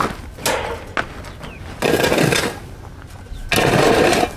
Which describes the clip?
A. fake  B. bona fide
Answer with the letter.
B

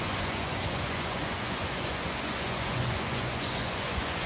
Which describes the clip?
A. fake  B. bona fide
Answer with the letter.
A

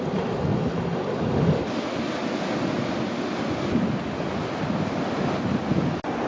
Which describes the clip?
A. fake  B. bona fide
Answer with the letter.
B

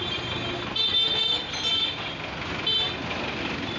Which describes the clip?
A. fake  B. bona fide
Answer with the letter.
B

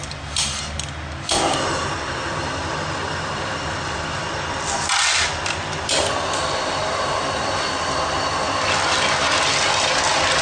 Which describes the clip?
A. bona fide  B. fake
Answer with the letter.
A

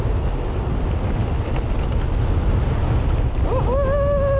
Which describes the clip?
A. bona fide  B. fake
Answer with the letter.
A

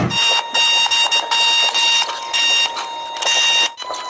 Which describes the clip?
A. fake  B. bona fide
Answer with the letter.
B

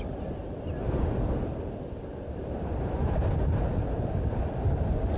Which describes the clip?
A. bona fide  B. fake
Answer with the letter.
A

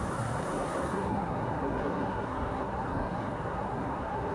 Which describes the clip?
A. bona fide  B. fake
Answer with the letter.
B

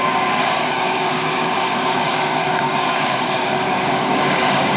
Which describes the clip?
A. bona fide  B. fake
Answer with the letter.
B